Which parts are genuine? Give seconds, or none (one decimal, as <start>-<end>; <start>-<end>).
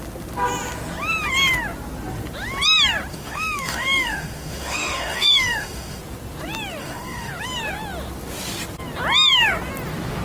0.0-3.1; 6.0-6.8; 7.3-10.2